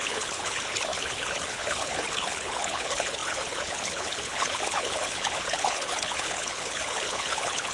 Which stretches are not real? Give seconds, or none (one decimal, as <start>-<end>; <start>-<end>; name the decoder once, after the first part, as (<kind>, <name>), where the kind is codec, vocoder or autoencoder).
0.0-7.7 (codec, HILCodec)